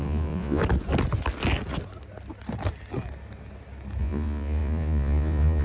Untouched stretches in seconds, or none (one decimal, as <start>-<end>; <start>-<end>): 0.6-4.0